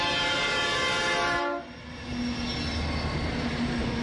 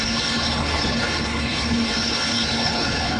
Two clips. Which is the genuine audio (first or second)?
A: first